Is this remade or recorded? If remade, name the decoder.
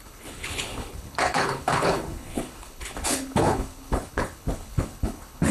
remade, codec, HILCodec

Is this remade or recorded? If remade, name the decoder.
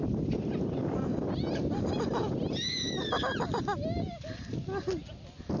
recorded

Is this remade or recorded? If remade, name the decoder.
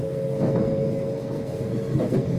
remade, codec, SNAC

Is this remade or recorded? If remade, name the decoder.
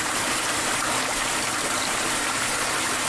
remade, vocoder, BigVGAN v2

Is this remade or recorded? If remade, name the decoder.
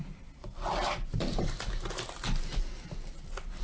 recorded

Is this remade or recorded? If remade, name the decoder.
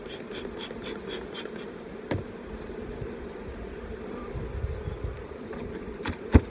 recorded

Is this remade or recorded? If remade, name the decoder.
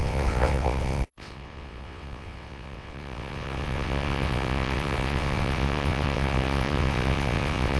remade, vocoder, WaveNeXt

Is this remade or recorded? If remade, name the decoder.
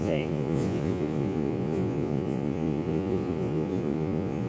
remade, vocoder, Vocos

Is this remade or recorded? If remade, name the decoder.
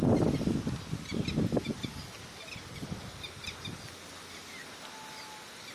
recorded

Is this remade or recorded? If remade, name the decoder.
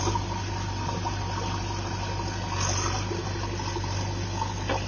recorded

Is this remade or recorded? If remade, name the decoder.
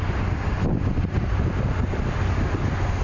recorded